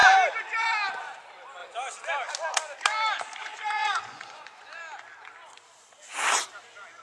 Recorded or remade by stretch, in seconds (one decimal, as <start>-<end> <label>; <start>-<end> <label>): 0.0-3.4 recorded; 3.4-4.8 remade; 4.8-7.0 recorded